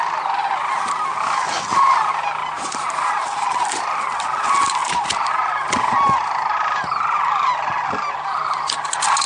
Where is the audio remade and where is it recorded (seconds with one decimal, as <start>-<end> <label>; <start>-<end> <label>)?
0.0-2.4 recorded; 2.4-3.1 remade; 3.1-9.3 recorded